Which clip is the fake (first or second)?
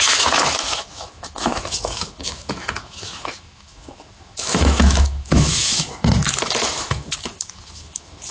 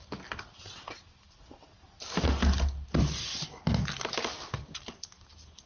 first